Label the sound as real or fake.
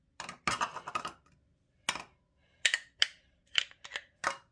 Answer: real